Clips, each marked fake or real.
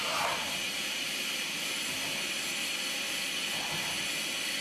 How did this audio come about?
real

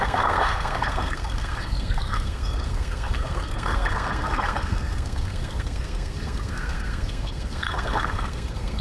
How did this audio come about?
fake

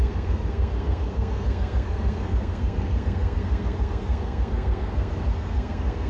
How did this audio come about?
fake